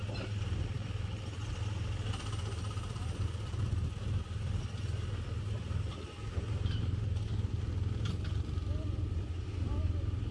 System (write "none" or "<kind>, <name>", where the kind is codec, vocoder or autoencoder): none